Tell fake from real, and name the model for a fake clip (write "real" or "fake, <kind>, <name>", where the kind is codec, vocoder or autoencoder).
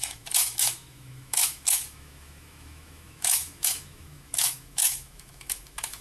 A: fake, autoencoder, DAC-VAE